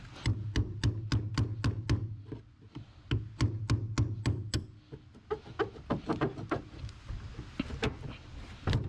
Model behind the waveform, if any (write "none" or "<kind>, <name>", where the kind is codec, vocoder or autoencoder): none